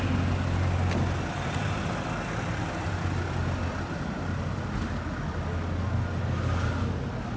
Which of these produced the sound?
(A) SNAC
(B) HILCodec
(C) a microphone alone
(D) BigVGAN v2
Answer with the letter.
C